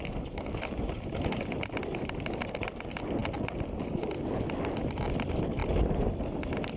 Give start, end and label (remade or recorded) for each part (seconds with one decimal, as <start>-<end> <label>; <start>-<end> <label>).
0.0-6.8 recorded